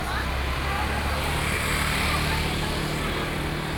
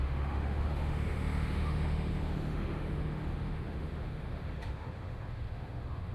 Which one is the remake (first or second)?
second